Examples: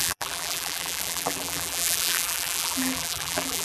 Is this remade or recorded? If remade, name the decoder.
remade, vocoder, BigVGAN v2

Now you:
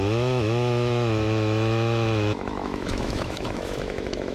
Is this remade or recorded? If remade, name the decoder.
remade, autoencoder, DAC-VAE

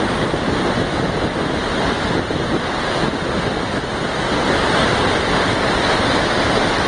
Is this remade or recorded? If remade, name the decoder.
recorded